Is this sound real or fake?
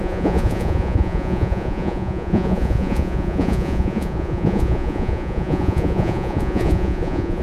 fake